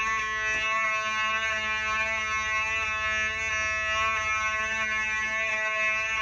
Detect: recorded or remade recorded